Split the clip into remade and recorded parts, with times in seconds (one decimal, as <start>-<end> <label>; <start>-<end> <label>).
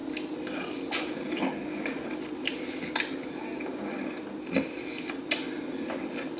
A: 0.0-6.4 recorded